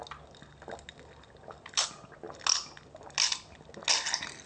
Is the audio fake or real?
real